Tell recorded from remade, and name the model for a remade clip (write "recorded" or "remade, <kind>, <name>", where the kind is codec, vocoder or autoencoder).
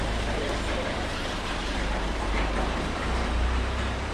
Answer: remade, vocoder, BigVGAN v2